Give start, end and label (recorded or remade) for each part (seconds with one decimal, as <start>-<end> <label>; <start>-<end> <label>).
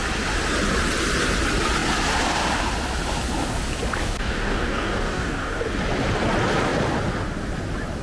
0.0-4.0 recorded; 4.0-5.6 remade; 5.6-8.0 recorded